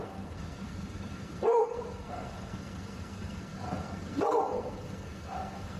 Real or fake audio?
fake